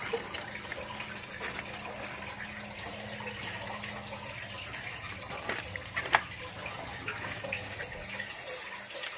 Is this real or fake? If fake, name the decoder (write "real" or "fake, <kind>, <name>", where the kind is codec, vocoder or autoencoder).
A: real